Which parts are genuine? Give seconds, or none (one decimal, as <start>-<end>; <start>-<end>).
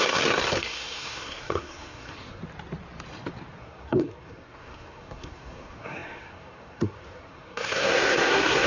2.4-3.6